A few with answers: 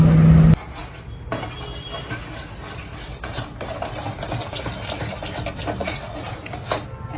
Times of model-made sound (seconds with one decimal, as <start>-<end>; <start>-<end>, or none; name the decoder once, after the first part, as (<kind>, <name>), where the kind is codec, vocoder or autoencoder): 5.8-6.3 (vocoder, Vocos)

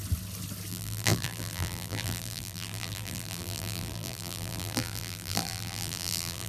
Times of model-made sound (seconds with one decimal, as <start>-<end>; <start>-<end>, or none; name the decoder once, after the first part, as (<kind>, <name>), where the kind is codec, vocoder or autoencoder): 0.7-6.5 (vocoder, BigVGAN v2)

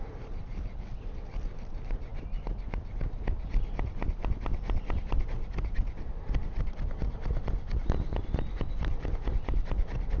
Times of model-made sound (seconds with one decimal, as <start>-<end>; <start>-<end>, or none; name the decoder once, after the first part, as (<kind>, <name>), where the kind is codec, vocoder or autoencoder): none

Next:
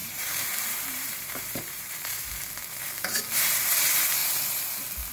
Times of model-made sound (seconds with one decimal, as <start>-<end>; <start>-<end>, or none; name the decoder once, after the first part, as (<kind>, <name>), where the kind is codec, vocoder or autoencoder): 0.0-2.4 (vocoder, BigVGAN v2)

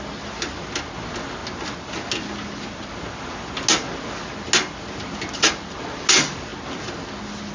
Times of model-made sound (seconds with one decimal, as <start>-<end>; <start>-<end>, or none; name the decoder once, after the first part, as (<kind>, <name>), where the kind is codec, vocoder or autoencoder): none

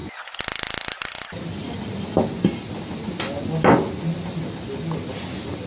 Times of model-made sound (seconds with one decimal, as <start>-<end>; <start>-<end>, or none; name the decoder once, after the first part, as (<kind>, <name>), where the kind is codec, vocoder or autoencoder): none